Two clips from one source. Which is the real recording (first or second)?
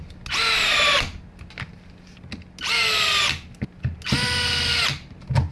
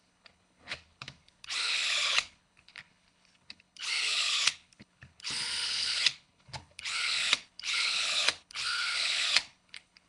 first